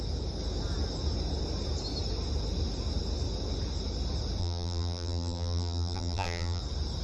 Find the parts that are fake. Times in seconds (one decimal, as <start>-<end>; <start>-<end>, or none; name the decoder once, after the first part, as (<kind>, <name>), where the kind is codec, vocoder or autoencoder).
4.4-6.6 (vocoder, BigVGAN v2)